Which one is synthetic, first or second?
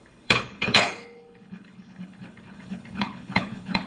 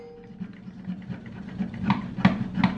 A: first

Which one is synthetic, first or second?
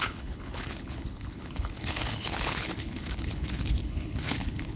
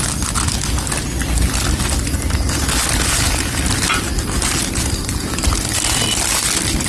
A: first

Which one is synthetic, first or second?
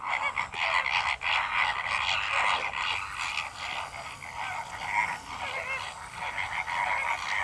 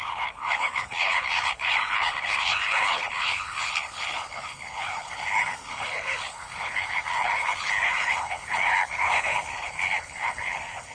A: second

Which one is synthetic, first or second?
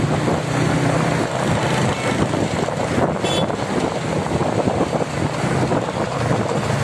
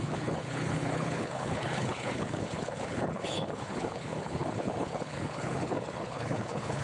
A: second